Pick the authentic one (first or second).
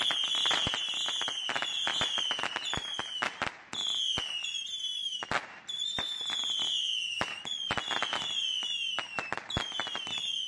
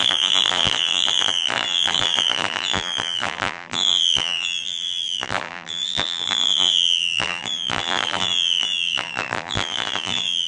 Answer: first